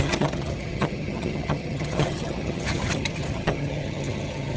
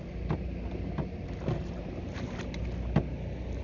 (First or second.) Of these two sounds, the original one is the second